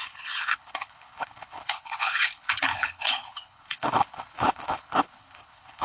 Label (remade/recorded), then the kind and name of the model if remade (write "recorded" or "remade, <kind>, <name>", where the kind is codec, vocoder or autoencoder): remade, codec, HILCodec